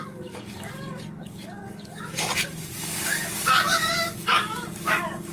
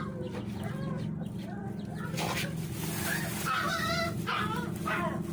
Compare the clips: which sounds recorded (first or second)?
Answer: second